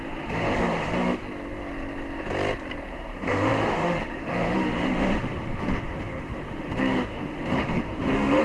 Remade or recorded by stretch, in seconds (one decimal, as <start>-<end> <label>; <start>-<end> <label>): 0.0-1.2 remade; 1.2-2.9 recorded; 2.9-8.4 remade